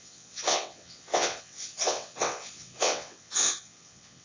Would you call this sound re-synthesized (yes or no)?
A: yes